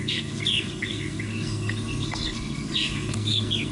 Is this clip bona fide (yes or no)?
no